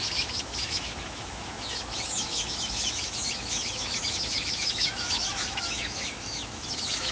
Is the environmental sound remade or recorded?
remade